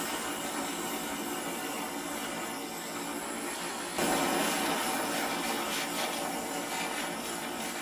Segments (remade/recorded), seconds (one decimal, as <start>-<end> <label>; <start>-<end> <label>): 0.0-7.8 recorded